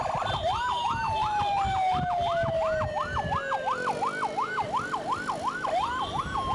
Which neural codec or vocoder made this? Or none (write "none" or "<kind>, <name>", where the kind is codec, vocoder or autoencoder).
none